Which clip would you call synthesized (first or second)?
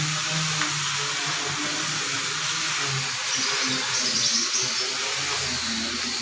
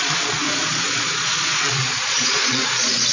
second